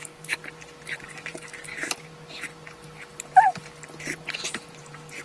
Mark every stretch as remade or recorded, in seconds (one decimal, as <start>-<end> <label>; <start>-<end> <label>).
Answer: 0.0-0.4 remade; 0.4-1.0 recorded; 1.0-1.7 remade; 1.7-4.8 recorded; 4.8-5.2 remade